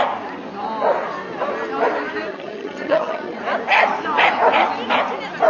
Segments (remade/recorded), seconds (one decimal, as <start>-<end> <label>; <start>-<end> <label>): 0.0-2.3 recorded; 2.3-3.4 remade; 3.4-5.5 recorded